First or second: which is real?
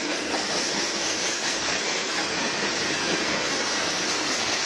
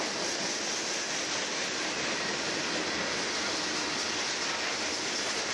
second